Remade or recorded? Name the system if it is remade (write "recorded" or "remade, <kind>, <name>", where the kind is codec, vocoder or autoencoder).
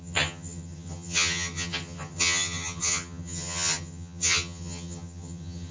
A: remade, vocoder, HiFi-GAN